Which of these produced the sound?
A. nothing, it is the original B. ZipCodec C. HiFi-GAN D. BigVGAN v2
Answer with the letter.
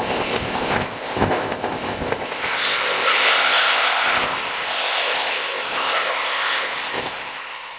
B